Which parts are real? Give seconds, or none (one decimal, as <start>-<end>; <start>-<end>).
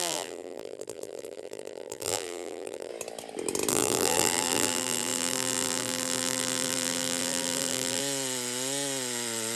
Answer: 2.9-3.7; 8.0-9.6